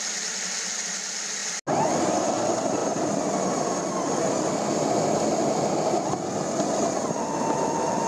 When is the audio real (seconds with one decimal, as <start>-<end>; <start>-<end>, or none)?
0.0-2.8; 3.8-8.1